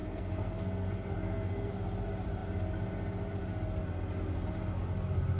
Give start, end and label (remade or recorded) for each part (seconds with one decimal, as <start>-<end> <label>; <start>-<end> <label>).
0.0-1.7 remade; 1.7-5.4 recorded